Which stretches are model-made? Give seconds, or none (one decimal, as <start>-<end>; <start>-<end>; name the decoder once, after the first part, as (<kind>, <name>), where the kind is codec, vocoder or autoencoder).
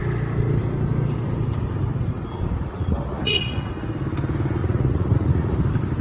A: 2.7-3.7 (vocoder, Vocos); 4.6-5.6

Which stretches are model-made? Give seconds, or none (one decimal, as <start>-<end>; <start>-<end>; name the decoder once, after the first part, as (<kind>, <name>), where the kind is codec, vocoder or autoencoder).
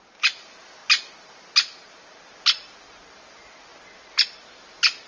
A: none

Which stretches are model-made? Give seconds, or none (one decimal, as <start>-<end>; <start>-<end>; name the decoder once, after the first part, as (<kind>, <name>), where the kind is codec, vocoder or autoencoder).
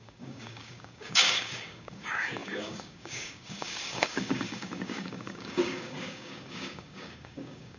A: 0.0-7.8 (codec, DAC)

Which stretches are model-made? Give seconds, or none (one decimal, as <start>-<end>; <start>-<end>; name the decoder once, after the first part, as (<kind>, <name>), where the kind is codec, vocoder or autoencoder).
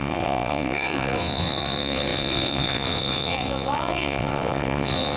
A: 0.0-5.2 (vocoder, WaveNeXt)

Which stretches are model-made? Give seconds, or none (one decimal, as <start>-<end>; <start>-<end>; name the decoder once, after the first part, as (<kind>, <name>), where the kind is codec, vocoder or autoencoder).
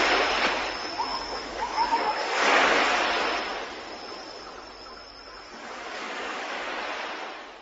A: 1.1-2.7 (codec, DAC); 5.6-6.6